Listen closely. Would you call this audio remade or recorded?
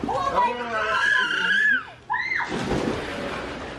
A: recorded